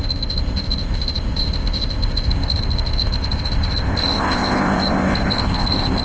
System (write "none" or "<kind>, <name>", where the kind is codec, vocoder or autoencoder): codec, ZipCodec